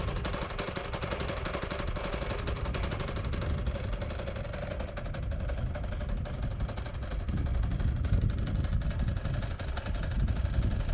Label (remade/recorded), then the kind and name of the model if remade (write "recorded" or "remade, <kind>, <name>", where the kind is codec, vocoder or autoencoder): recorded